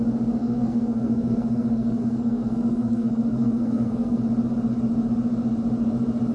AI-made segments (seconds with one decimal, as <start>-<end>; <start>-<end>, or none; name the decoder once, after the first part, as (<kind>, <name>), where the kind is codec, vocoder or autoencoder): 0.4-4.2 (codec, SNAC)